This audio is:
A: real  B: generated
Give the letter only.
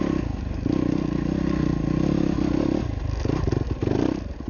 A